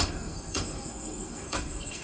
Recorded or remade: remade